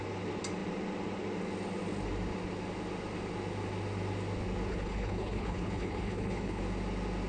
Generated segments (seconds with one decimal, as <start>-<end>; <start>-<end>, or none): 4.7-6.6